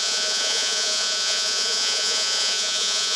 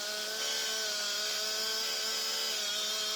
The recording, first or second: second